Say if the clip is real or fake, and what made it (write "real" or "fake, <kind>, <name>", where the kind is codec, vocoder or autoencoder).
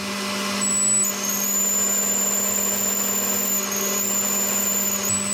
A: real